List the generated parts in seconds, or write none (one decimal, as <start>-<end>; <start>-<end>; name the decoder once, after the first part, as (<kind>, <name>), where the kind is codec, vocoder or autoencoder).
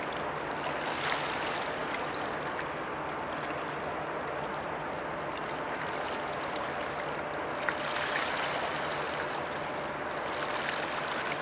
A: none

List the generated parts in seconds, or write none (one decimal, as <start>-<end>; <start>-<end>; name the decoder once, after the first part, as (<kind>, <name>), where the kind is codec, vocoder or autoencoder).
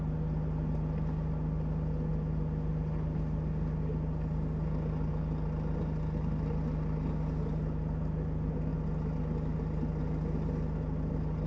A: none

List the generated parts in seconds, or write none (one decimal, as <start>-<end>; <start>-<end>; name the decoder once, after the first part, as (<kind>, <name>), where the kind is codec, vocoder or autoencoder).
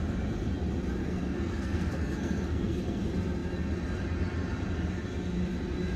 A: 1.0-3.0 (codec, SNAC)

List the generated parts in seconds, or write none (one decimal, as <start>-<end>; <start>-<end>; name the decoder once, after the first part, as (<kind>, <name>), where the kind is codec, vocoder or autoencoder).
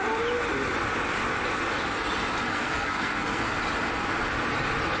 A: 2.5-3.5 (codec, SNAC)